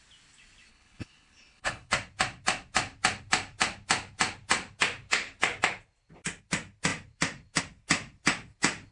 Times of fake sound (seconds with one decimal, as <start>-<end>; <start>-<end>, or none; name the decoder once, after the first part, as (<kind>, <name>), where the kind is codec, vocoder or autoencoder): 0.7-1.9 (codec, HILCodec)